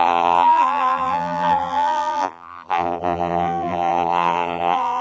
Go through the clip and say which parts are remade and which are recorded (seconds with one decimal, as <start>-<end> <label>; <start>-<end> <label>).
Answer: 0.0-5.0 remade